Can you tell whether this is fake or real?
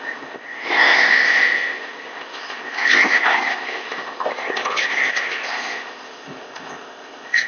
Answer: fake